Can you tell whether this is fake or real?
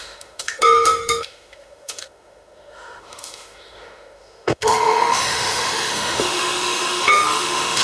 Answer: fake